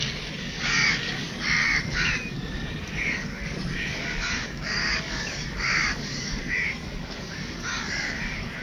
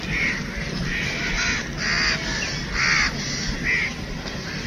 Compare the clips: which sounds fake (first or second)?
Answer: first